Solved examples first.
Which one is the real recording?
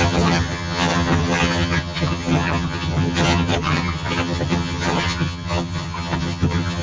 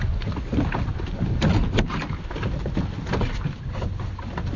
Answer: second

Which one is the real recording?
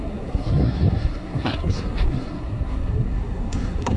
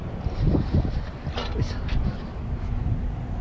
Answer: second